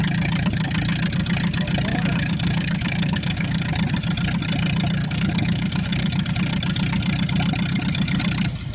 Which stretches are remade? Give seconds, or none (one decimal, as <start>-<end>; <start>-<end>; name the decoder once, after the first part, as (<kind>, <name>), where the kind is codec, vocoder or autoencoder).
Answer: 1.9-3.7 (codec, DAC); 5.0-6.3